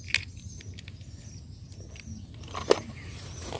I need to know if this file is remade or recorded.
recorded